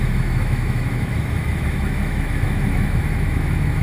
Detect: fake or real fake